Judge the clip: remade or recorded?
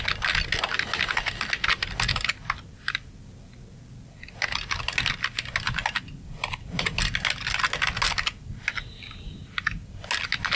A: recorded